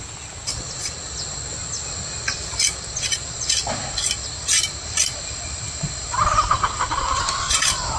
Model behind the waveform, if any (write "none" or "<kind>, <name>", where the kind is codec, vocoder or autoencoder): vocoder, BigVGAN v2